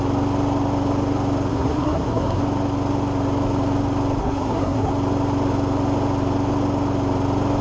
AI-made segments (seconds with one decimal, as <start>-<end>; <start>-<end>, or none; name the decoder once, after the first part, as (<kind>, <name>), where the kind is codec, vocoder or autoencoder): 1.5-2.4 (codec, SNAC); 4.2-4.9